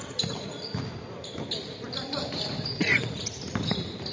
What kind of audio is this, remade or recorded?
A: recorded